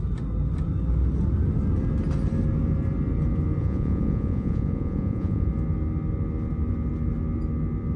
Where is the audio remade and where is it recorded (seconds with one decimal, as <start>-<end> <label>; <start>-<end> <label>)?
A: 0.0-3.6 recorded; 3.6-5.5 remade; 5.5-8.0 recorded